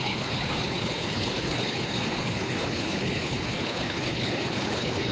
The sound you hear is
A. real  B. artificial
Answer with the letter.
B